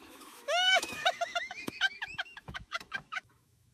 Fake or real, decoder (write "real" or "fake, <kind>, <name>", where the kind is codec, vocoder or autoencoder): fake, autoencoder, DAC-VAE